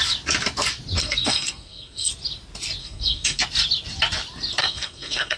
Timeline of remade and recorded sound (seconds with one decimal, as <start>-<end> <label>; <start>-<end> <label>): 0.0-1.0 recorded; 1.0-2.1 remade; 2.1-2.8 recorded; 2.8-3.4 remade; 3.4-4.6 recorded; 4.6-5.4 remade